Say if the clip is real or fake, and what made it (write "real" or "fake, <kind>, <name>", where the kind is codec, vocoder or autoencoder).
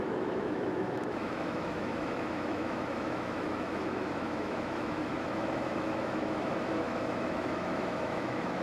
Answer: fake, autoencoder, DAC-VAE